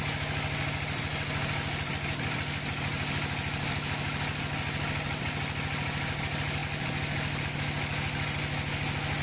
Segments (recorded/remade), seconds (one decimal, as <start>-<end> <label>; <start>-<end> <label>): 0.0-9.2 recorded